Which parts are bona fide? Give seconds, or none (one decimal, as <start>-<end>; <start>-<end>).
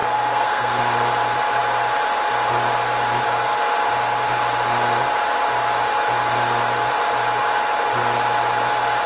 0.8-9.1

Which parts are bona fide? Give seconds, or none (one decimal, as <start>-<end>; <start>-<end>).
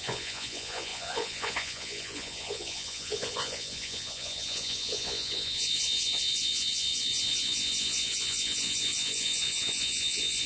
none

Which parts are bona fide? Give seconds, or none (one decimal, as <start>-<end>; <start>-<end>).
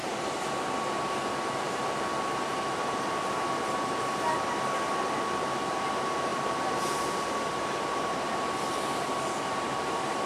4.1-6.3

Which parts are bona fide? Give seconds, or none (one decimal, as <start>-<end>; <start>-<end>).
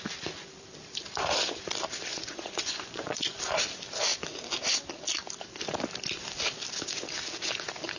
0.0-2.1; 3.4-8.0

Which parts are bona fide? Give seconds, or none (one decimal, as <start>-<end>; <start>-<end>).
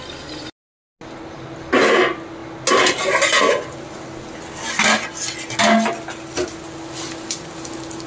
0.0-8.1